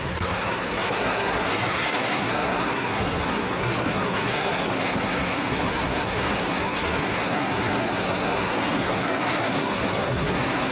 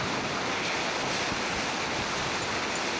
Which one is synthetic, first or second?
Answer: first